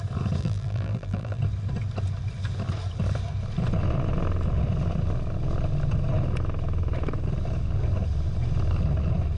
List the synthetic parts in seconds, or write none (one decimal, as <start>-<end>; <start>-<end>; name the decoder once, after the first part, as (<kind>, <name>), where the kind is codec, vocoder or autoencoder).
0.4-1.4 (vocoder, BigVGAN v2)